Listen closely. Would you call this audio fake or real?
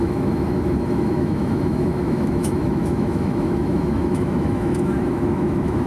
fake